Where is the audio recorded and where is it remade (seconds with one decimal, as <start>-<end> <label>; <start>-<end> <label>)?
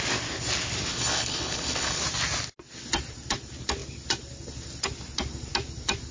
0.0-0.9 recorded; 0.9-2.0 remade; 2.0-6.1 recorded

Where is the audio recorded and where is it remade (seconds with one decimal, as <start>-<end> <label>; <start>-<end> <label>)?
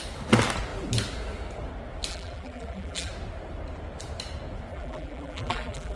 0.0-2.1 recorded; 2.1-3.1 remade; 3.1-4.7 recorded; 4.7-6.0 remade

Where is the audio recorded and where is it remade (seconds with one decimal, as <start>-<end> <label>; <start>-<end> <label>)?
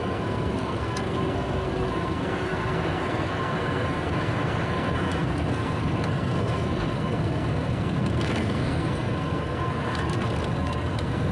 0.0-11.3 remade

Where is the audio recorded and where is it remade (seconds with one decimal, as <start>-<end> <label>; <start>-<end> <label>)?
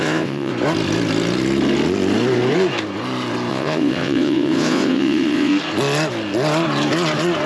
0.0-0.5 remade; 0.5-3.5 recorded; 3.5-5.5 remade; 5.5-7.5 recorded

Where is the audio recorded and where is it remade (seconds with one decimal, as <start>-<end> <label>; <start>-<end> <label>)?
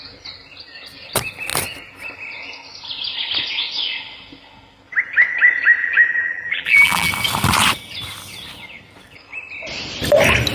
0.0-5.8 recorded; 5.8-7.1 remade; 7.1-10.5 recorded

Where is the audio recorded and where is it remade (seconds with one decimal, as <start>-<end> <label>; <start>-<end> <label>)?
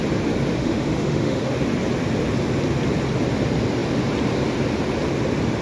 0.0-0.6 recorded; 0.6-1.5 remade; 1.5-5.6 recorded